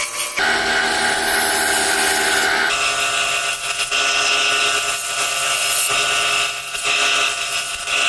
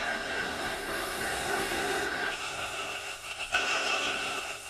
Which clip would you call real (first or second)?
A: first